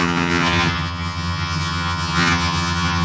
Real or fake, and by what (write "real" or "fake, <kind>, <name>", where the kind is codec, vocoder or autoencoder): fake, vocoder, HiFi-GAN